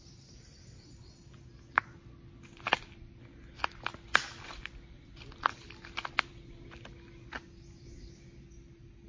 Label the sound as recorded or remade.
recorded